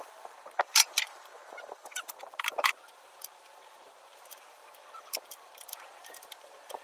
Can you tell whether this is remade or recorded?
remade